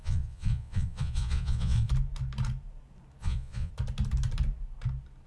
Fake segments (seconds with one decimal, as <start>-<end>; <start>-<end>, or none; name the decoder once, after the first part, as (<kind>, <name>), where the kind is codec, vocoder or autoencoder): 0.0-1.9 (vocoder, Vocos); 3.2-3.7